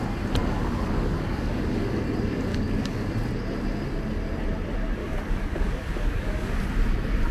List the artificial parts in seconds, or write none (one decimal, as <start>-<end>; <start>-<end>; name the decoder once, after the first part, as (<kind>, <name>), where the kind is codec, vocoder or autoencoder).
0.4-2.0 (codec, DAC); 2.5-3.1; 5.0-6.6